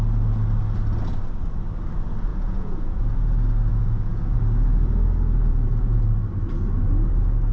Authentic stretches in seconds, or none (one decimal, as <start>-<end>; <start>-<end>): 0.0-2.3; 3.0-3.7; 4.4-5.5; 6.0-7.5